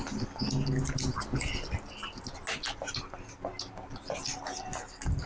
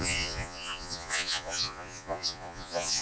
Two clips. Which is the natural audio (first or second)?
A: first